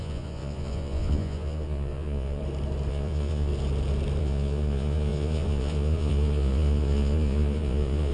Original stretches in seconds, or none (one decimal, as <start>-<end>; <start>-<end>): 2.4-2.9; 3.5-4.2